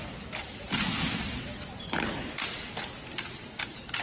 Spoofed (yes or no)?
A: no